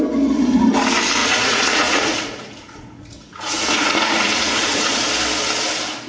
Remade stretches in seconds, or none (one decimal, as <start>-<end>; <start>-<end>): 1.2-4.9